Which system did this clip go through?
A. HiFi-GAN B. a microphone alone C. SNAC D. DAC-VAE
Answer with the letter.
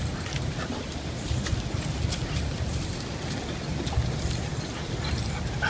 B